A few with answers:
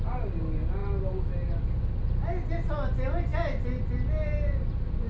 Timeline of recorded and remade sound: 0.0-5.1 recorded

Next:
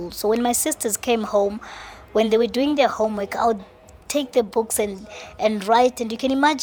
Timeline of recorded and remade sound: 0.0-1.8 recorded; 1.8-4.7 remade; 4.7-6.6 recorded